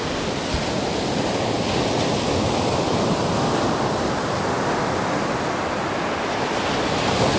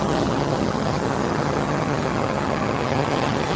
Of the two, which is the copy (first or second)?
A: second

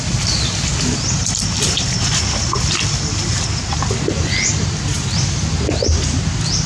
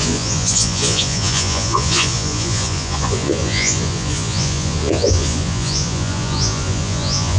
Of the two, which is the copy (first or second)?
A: second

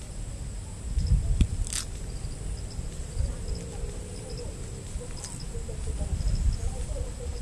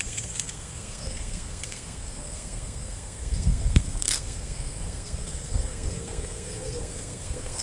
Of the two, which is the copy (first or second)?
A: second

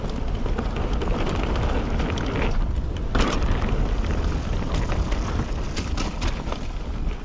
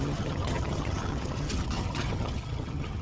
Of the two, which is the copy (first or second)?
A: second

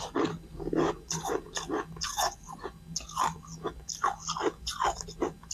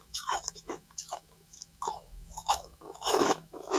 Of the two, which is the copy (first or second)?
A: second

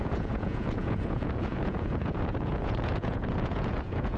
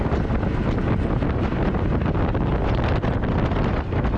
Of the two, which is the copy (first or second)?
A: first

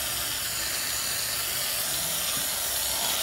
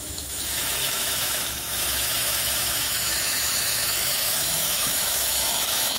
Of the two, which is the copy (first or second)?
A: second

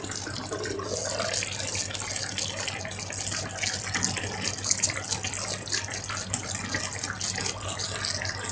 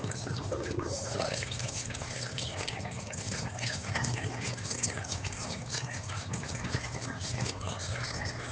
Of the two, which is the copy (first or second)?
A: second